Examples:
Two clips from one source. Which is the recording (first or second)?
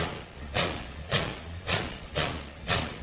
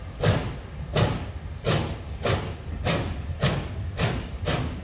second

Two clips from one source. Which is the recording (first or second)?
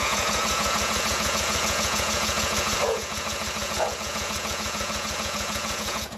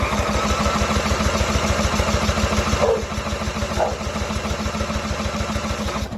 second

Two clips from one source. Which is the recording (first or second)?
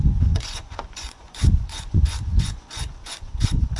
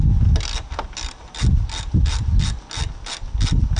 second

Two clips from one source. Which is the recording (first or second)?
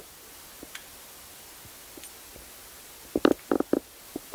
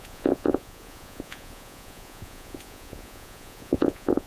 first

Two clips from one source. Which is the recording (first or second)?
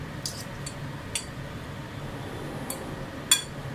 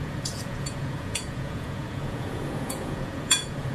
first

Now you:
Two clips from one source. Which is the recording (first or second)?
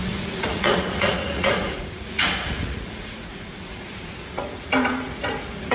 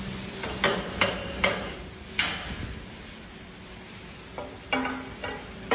second